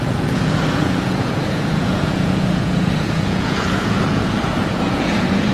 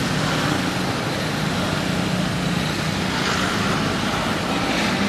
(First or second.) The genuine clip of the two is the second